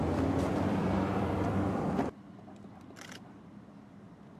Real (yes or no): no